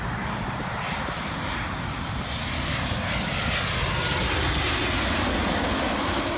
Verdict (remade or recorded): recorded